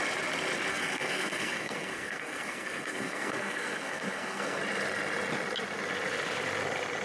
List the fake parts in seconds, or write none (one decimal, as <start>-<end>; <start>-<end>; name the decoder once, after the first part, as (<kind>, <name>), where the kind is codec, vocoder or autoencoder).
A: 0.7-4.6 (codec, SNAC)